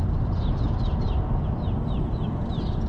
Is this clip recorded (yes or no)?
yes